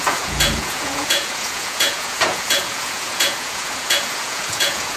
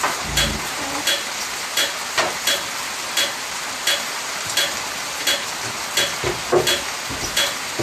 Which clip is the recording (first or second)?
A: second